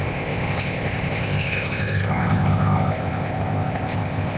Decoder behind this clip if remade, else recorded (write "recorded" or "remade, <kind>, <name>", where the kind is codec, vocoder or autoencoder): remade, codec, ZipCodec